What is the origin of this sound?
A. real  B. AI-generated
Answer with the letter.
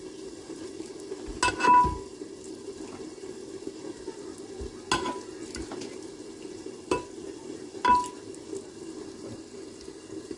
A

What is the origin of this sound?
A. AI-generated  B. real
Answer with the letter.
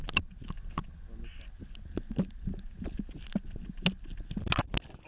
B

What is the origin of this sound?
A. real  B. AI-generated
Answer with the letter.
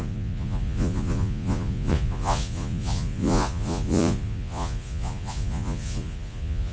B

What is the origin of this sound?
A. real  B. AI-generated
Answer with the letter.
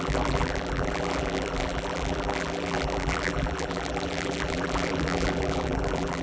B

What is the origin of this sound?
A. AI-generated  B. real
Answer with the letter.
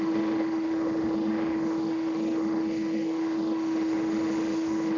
A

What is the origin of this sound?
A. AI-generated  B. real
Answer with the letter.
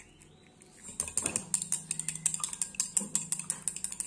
B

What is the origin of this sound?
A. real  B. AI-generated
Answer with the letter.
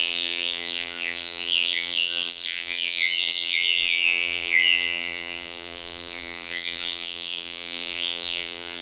B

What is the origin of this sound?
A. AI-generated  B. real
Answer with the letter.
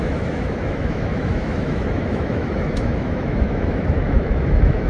A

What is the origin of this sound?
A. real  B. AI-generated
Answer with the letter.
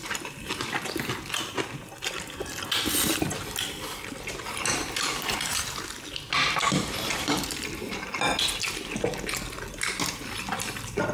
A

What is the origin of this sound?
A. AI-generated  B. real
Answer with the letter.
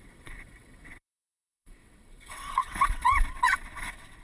A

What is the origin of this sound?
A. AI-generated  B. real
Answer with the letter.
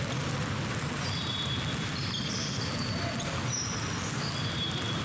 B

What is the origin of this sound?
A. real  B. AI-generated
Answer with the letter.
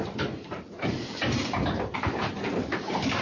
B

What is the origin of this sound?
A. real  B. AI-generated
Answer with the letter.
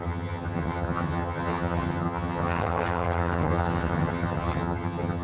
B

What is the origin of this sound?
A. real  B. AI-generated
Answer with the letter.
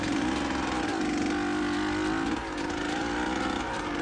A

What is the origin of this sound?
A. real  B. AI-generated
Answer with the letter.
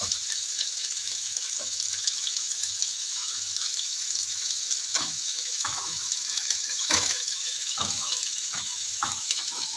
B